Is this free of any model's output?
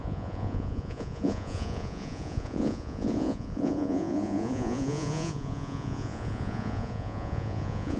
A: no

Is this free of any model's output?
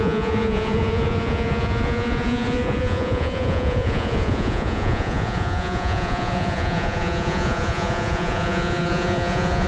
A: no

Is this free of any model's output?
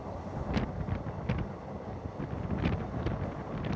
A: yes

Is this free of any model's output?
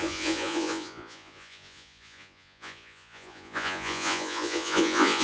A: no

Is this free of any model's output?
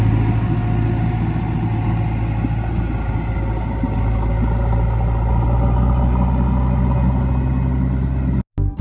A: yes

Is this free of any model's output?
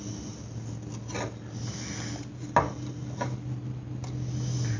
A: yes